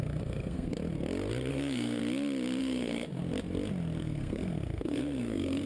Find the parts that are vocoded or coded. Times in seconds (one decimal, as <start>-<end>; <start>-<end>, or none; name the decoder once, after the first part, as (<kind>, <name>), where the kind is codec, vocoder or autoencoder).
0.0-0.7 (codec, SNAC); 1.5-2.0; 2.6-3.2; 4.0-5.7